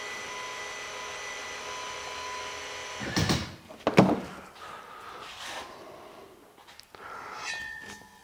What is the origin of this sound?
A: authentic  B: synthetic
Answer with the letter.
A